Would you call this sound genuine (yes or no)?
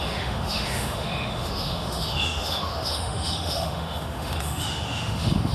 no